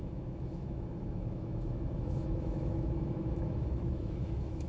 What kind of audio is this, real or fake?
fake